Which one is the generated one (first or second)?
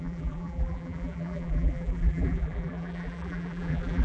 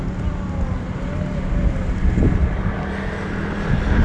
first